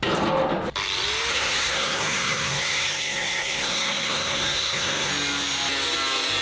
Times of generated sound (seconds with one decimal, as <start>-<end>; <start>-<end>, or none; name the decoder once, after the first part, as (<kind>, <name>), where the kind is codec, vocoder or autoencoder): 1.3-5.1 (codec, SNAC)